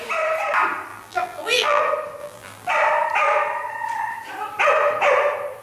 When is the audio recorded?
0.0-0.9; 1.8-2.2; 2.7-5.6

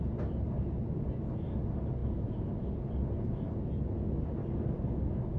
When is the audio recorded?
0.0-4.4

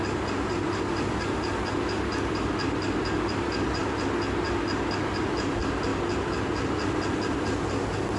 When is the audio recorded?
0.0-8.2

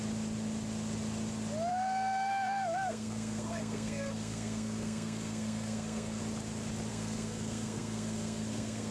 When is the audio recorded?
0.0-1.7; 6.2-6.9

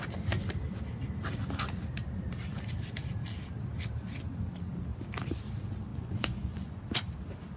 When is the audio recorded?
0.0-5.9; 6.8-7.6

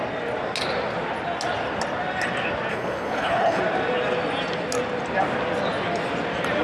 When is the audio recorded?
0.0-2.7; 3.6-6.6